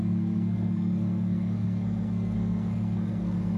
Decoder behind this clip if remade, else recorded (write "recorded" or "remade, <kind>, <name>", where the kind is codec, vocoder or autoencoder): remade, codec, SNAC